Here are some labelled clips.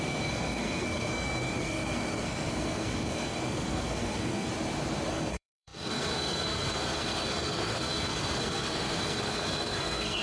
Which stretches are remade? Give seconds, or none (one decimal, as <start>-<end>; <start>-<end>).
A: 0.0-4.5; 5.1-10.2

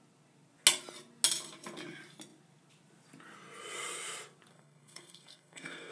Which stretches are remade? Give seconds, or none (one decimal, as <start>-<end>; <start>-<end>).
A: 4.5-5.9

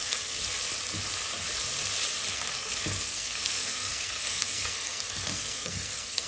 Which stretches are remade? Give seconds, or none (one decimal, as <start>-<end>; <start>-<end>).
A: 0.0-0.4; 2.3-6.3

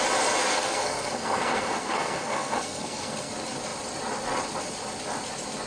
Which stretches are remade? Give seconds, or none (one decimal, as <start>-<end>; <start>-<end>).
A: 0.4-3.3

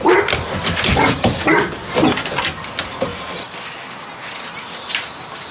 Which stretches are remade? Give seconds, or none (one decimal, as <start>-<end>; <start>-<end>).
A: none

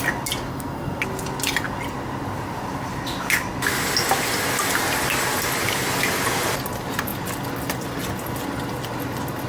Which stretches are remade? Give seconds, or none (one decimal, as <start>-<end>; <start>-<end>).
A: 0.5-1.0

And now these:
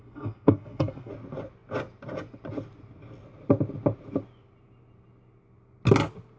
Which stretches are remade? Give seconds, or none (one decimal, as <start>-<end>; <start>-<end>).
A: 0.0-1.1

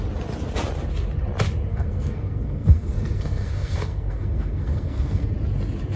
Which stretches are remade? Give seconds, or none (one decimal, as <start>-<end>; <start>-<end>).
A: 1.7-5.3